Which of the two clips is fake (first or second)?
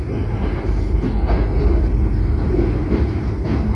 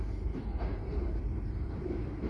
second